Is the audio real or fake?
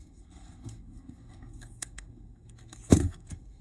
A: fake